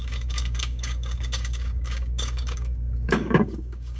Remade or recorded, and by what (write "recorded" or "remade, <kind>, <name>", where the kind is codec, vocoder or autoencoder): remade, codec, DAC